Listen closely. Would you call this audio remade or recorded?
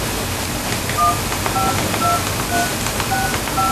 recorded